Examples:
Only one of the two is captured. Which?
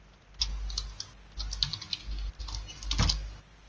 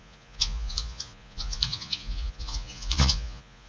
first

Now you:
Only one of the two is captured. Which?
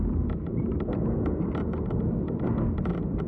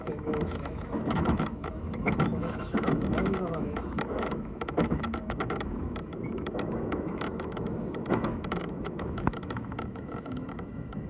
first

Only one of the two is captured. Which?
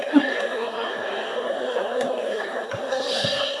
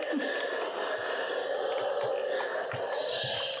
second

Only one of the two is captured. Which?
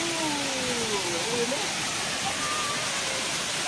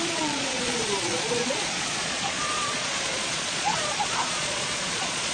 first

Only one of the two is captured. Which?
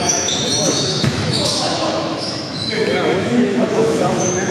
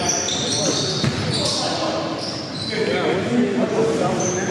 second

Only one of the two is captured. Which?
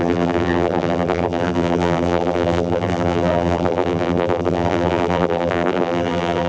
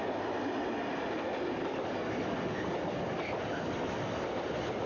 second